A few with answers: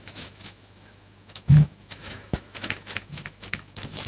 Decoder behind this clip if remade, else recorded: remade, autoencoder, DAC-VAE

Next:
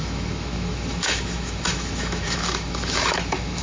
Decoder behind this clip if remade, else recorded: remade, autoencoder, DAC-VAE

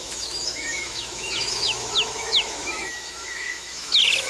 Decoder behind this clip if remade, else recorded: remade, autoencoder, DAC-VAE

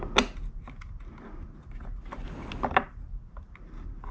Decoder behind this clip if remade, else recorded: recorded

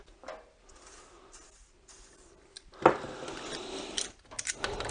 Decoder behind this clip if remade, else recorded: recorded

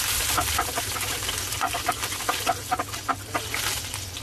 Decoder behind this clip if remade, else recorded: recorded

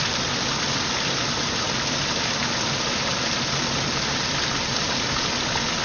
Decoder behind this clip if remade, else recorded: recorded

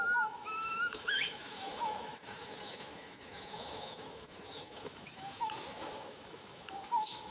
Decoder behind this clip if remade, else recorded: remade, autoencoder, DAC-VAE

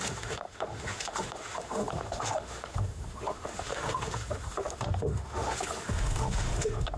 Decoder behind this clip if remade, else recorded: remade, autoencoder, DAC-VAE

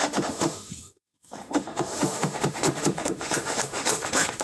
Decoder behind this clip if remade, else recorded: remade, autoencoder, DAC-VAE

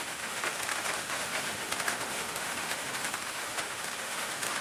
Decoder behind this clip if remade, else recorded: remade, autoencoder, DAC-VAE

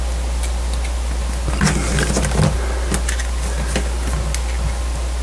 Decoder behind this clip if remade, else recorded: recorded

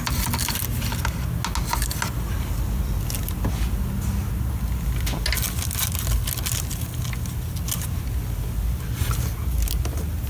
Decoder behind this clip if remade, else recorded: recorded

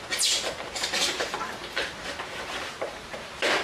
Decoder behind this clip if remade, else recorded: recorded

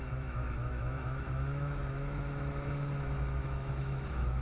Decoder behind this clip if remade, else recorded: remade, autoencoder, DAC-VAE